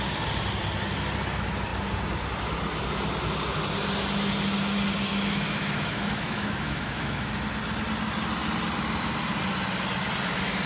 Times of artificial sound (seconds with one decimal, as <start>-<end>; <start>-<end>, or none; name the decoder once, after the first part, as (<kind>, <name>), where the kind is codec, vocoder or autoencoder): 5.1-7.3 (autoencoder, DAC-VAE)